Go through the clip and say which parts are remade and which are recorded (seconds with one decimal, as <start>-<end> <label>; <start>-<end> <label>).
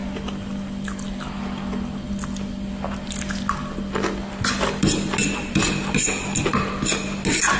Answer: 0.0-7.6 recorded